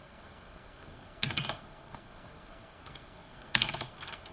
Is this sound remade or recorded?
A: remade